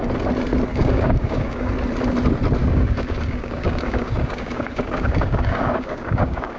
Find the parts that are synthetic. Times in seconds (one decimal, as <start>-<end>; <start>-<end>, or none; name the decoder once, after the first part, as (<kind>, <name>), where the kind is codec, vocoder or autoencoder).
0.7-1.7 (codec, DAC); 2.6-6.6